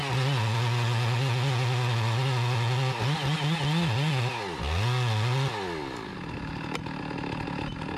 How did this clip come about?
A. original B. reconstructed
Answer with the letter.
A